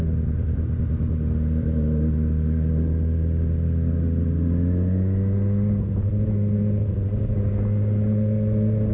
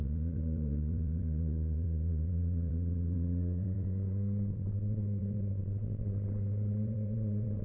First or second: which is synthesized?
second